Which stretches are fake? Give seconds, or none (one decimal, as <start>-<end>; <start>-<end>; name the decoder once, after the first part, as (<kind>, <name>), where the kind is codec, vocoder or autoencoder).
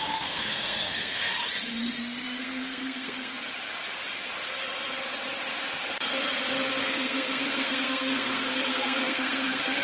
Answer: 0.0-1.3 (codec, SNAC); 2.4-3.3; 6.8-9.8